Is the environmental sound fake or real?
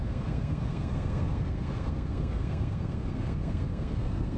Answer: fake